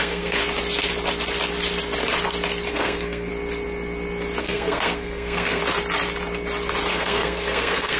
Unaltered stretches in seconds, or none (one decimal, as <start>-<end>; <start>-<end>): 0.4-2.7; 3.3-4.4; 5.6-6.9